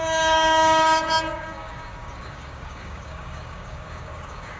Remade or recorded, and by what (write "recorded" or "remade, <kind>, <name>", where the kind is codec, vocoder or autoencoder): remade, codec, DAC